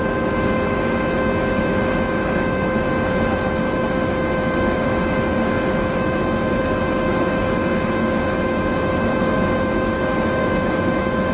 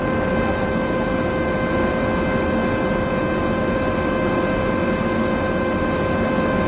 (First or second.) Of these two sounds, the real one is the second